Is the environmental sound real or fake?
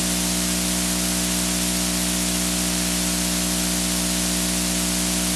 real